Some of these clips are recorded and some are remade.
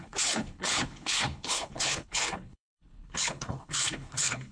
remade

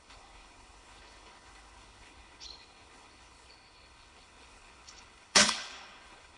remade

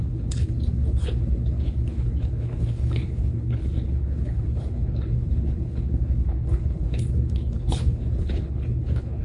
remade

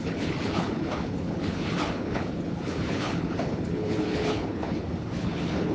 remade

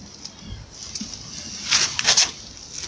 recorded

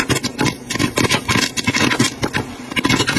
recorded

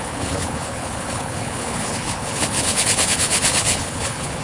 remade